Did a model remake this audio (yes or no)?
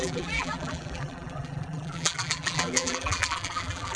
yes